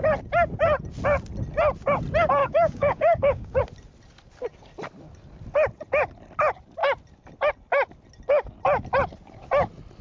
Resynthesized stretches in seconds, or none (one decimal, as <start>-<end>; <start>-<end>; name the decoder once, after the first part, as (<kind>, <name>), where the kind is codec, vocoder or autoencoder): 2.4-3.6 (codec, DAC)